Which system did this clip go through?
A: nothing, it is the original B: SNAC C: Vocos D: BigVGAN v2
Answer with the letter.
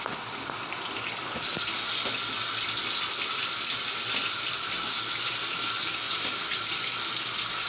D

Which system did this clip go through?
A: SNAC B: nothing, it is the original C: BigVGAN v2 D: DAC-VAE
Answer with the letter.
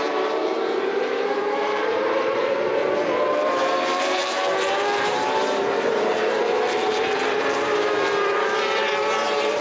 C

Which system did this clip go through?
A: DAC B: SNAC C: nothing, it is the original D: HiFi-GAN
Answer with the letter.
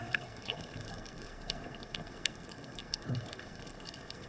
B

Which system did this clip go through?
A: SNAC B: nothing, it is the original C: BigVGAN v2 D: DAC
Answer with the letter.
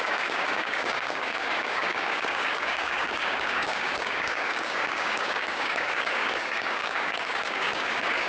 D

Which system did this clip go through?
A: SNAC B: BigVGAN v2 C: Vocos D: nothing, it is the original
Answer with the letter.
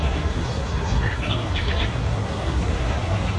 A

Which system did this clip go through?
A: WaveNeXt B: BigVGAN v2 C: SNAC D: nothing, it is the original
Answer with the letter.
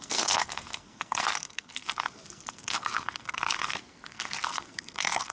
C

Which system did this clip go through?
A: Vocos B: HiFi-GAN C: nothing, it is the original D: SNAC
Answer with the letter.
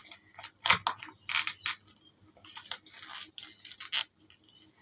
C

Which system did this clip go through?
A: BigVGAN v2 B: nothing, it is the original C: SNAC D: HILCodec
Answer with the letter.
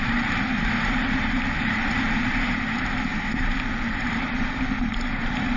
A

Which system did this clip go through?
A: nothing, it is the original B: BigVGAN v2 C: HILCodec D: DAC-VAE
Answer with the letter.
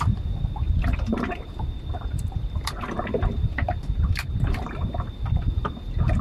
B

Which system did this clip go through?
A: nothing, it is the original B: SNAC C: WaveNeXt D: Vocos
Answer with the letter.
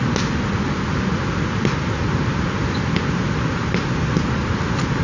A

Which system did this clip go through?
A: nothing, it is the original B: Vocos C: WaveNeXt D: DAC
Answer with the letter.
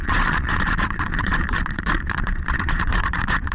B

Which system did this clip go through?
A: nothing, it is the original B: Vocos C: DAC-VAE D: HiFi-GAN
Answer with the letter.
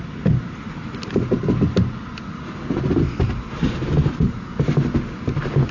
A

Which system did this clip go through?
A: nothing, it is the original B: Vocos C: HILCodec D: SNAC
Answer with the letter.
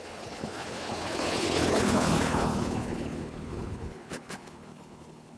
C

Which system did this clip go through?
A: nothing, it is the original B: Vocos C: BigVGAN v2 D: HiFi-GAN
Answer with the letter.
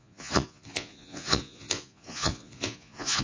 B